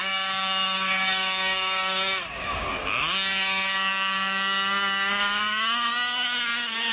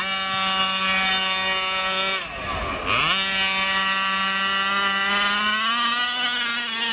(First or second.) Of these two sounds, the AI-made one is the first